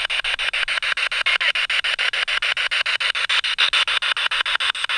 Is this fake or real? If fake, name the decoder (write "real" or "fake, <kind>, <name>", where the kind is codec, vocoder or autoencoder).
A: real